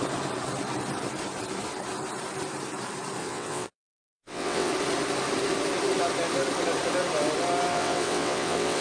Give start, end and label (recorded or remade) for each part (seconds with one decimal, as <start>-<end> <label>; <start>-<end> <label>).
0.0-3.2 recorded; 3.2-4.7 remade; 4.7-7.7 recorded; 7.7-8.8 remade